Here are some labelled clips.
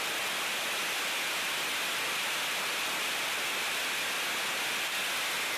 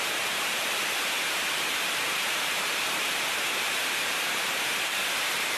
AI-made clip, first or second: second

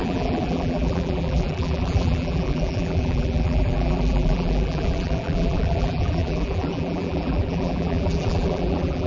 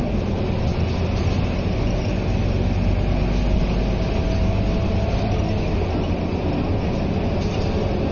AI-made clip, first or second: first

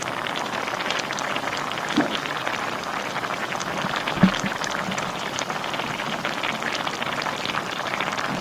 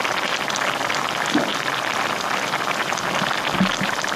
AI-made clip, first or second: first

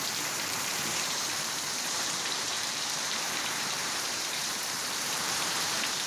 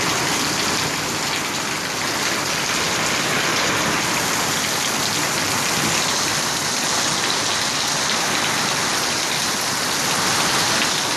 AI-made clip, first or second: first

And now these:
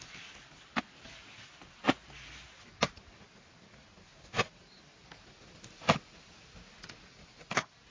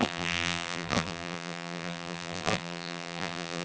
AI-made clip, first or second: second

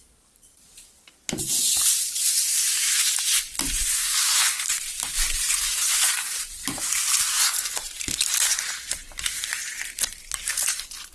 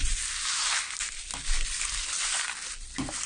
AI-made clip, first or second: first